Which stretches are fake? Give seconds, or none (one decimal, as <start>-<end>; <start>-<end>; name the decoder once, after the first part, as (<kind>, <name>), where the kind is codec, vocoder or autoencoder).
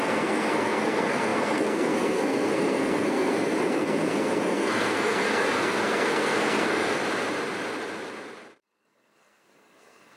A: 0.0-7.0 (codec, SNAC); 8.6-10.2